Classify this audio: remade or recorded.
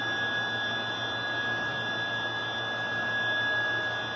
recorded